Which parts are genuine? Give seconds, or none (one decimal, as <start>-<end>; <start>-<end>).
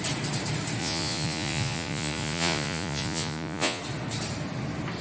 0.0-0.8; 3.8-5.0